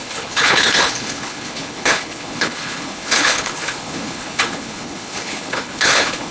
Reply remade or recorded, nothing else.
remade